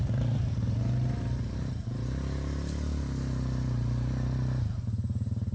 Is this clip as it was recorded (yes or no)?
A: yes